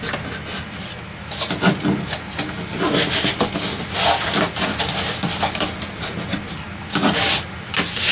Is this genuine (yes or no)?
yes